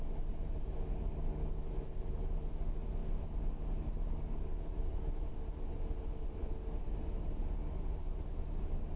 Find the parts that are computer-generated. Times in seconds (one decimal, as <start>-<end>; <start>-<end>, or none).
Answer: none